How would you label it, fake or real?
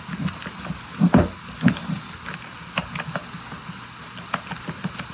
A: real